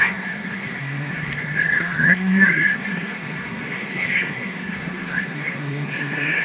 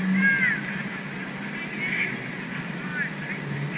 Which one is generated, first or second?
first